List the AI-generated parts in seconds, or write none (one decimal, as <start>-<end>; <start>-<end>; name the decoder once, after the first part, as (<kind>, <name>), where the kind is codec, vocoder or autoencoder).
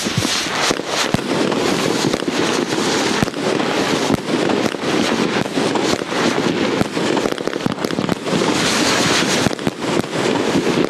5.2-5.7 (codec, DAC); 8.4-9.0